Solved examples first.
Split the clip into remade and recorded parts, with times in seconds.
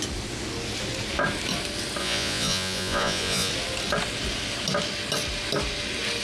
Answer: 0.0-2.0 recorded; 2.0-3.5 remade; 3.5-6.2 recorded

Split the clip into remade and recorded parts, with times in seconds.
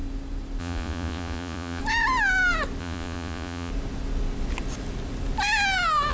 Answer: 0.0-0.6 recorded; 0.6-1.8 remade; 1.8-2.8 recorded; 2.8-3.7 remade; 3.7-6.1 recorded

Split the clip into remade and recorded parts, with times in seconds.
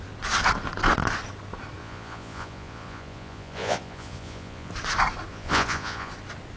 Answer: 0.0-1.8 recorded; 1.8-4.7 remade; 4.7-5.3 recorded; 5.3-6.1 remade; 6.1-6.6 recorded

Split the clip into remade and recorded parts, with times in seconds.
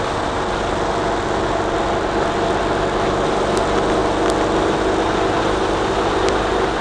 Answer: 0.0-6.8 recorded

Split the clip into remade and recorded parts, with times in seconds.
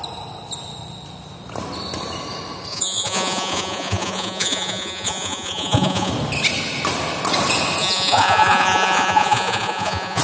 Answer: 0.0-2.7 recorded; 2.7-6.1 remade; 6.1-7.8 recorded; 7.8-10.2 remade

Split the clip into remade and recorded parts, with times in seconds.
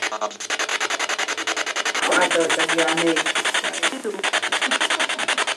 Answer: 0.0-5.6 recorded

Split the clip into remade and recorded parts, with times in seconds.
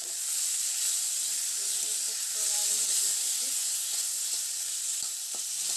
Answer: 0.0-3.6 recorded; 3.6-4.5 remade; 4.5-5.8 recorded